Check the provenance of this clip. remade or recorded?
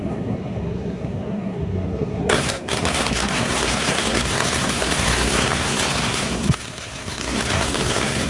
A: remade